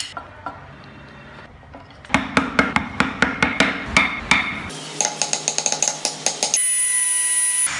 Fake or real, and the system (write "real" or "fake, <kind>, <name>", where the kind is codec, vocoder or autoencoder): real